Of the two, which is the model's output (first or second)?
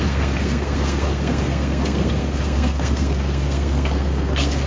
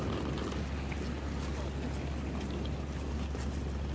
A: first